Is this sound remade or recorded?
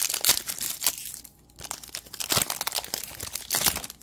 recorded